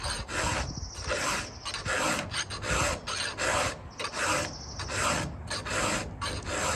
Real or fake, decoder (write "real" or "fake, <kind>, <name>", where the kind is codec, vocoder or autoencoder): real